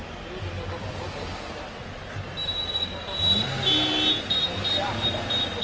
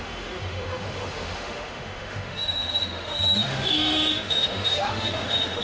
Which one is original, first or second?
first